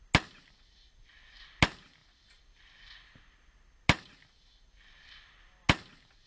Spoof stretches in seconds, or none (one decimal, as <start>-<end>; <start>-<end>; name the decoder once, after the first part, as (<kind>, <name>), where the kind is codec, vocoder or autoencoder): none